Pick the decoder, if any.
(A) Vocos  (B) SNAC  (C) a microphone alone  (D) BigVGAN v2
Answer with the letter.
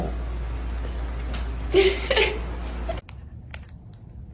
C